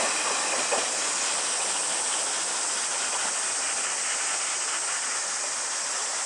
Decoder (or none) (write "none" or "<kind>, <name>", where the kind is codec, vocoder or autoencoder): none